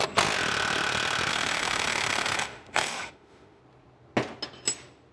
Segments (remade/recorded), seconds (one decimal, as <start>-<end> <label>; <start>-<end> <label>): 0.0-1.3 recorded; 1.3-3.6 remade; 3.6-5.1 recorded